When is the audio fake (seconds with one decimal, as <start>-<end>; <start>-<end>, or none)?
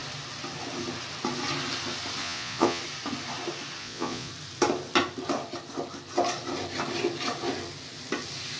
2.2-2.8; 3.8-4.3